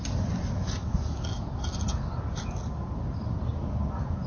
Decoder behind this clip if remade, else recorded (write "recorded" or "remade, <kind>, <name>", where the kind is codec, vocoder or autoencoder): recorded